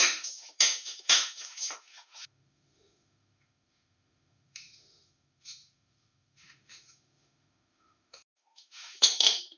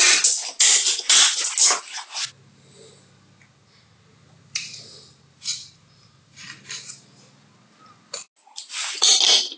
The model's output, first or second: first